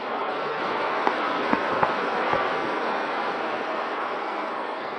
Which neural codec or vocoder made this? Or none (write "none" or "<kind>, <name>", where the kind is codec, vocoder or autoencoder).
codec, SNAC